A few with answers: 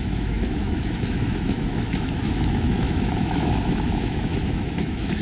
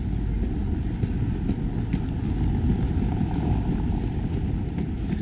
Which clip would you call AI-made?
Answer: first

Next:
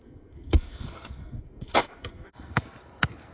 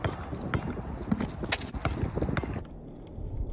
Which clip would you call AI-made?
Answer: first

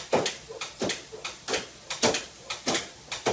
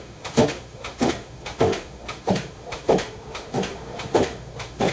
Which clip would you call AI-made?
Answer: second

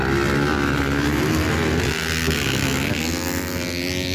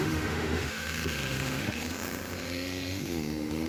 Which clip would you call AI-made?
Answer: second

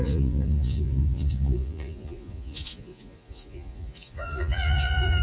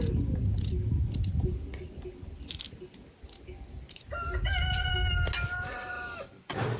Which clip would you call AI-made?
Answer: first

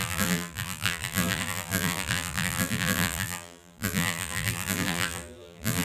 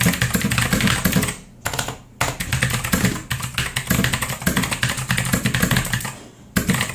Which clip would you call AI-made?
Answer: first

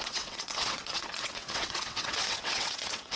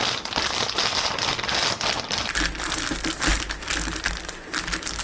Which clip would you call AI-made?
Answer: first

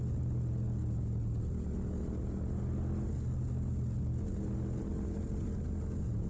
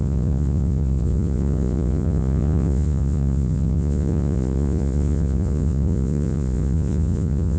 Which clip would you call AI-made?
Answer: second